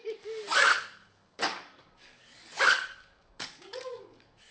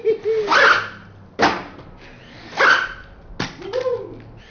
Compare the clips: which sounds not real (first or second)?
first